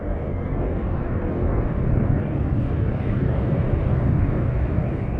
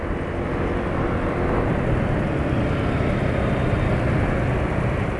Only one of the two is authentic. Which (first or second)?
second